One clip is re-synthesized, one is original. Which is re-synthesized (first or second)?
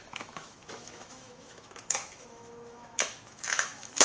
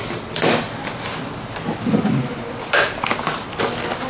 first